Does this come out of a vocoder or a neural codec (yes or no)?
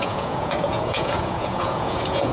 yes